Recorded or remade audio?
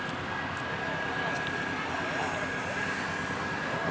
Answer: recorded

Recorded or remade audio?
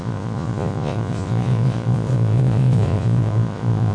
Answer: remade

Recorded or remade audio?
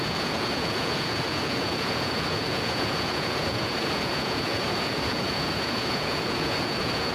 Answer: remade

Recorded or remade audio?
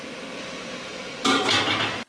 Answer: recorded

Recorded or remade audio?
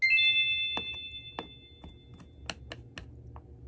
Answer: recorded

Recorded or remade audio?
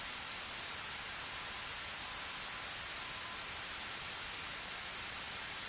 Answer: recorded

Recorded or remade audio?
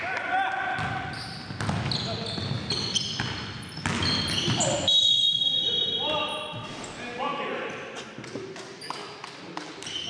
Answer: recorded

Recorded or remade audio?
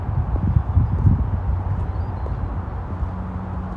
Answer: recorded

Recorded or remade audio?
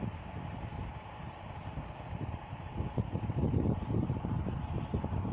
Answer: recorded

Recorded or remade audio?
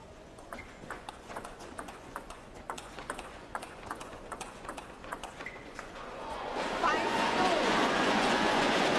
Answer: remade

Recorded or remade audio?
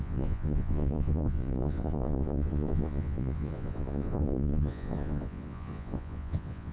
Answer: remade